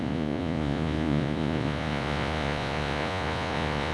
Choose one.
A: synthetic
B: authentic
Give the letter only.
A